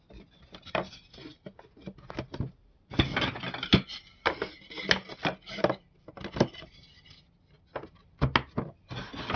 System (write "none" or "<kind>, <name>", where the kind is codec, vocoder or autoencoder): none